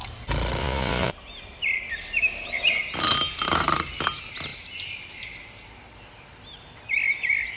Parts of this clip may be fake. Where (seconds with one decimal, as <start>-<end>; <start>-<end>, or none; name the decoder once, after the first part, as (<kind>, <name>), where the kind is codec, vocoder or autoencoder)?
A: 0.6-1.1 (vocoder, Vocos)